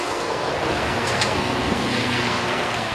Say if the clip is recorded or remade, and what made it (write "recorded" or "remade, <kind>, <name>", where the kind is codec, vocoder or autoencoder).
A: remade, codec, SNAC